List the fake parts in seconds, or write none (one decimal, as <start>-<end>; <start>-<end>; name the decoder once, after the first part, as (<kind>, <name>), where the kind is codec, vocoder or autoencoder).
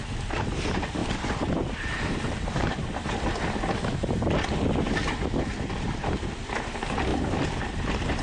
1.0-3.2 (vocoder, BigVGAN v2)